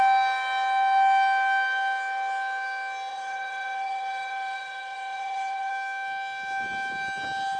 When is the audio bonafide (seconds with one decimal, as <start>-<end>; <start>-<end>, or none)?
0.0-3.1; 5.7-7.6